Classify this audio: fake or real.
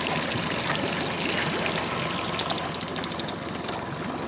real